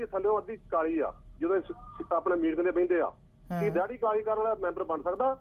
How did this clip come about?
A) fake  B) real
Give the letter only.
B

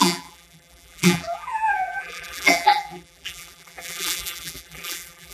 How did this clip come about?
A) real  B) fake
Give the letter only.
B